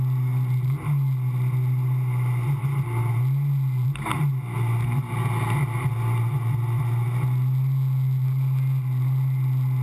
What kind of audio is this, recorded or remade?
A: recorded